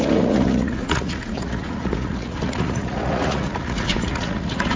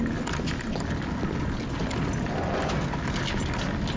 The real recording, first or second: second